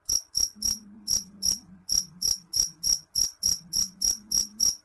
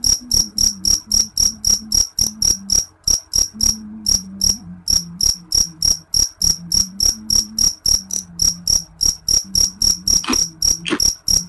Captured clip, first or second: second